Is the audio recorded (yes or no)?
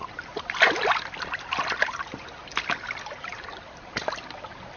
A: yes